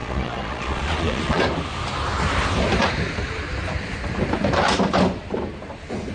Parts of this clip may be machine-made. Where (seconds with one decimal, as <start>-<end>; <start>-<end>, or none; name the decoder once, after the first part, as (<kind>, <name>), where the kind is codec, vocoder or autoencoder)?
0.0-1.4 (vocoder, Vocos)